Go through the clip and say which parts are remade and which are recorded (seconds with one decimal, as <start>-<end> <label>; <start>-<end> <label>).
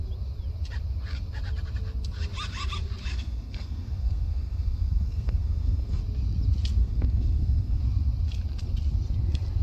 0.0-3.1 recorded; 3.1-6.0 remade; 6.0-6.8 recorded; 6.8-7.8 remade; 7.8-9.6 recorded